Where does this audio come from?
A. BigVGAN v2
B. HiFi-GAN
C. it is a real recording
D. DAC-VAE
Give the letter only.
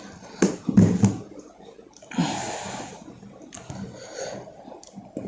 C